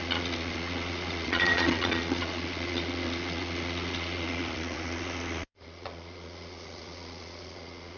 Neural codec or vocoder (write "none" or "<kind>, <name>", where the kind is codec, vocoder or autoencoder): vocoder, Vocos